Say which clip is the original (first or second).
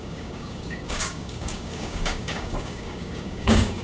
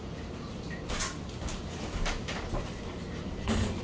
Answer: second